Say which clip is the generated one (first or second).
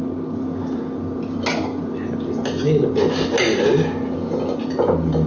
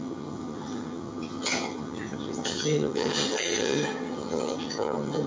second